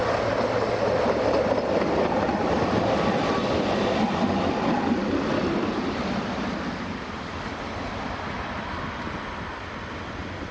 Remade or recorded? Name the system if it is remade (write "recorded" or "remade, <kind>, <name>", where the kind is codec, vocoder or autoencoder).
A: recorded